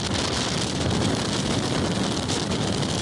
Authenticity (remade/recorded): recorded